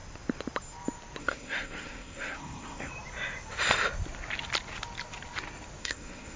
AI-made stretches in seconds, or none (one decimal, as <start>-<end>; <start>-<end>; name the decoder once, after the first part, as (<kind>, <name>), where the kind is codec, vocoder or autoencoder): 1.2-2.9 (codec, SNAC); 5.8-6.4